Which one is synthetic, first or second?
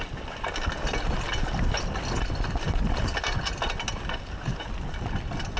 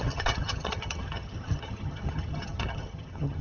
second